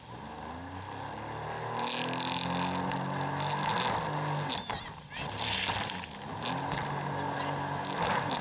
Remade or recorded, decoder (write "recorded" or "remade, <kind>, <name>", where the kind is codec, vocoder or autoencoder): recorded